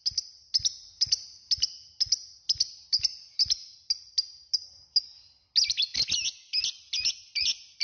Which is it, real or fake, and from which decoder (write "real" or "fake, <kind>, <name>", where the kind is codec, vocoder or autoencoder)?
real